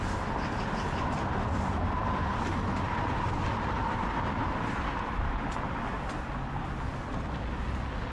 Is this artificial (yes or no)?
no